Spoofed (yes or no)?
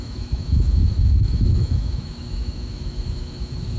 yes